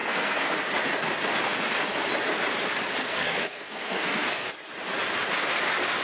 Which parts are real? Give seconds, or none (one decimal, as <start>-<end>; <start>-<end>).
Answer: 0.5-3.0; 4.5-6.0